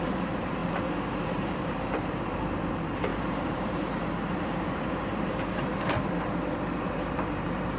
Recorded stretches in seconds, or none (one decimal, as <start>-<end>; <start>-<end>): none